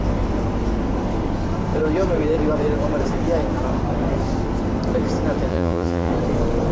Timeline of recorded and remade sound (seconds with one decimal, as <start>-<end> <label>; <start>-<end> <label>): 0.0-5.5 recorded; 5.5-6.1 remade; 6.1-6.7 recorded

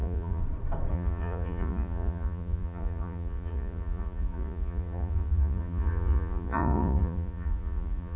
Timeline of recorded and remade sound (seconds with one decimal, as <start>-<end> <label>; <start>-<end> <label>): 0.0-0.4 remade; 0.4-0.9 recorded; 0.9-8.2 remade

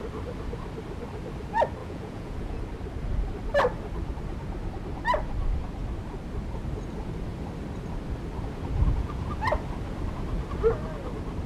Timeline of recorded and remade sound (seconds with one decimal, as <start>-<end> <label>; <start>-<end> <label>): 0.0-1.8 recorded; 1.8-2.6 remade; 2.6-11.5 recorded

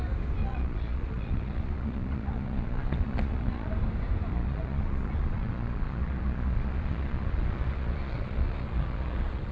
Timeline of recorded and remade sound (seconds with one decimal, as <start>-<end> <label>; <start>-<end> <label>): 0.0-0.4 recorded; 0.4-3.7 remade; 3.7-4.3 recorded; 4.3-9.5 remade

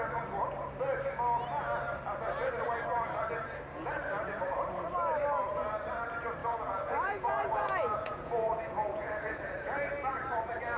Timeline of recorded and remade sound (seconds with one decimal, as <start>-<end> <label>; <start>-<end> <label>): 0.0-6.4 recorded; 6.4-9.9 remade; 9.9-10.8 recorded

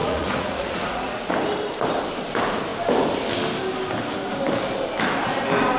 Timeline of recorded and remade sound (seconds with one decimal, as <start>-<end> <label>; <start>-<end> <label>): 0.0-1.3 remade; 1.3-5.8 recorded

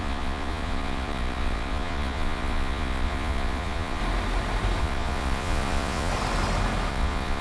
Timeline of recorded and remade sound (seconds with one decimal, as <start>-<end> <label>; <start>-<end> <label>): 0.0-4.0 remade; 4.0-4.8 recorded; 4.8-6.1 remade; 6.1-6.9 recorded; 6.9-7.4 remade

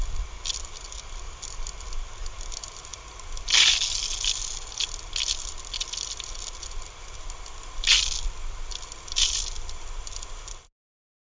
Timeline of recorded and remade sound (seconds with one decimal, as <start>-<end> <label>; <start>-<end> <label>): 0.0-11.3 recorded